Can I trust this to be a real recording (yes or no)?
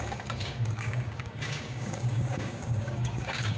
no